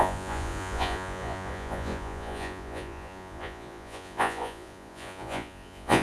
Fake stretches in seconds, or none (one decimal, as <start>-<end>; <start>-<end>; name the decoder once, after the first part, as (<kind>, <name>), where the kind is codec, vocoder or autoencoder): 0.0-6.0 (vocoder, Vocos)